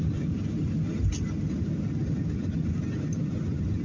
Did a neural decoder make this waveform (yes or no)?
no